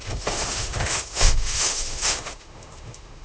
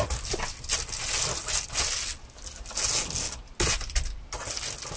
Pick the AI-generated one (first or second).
first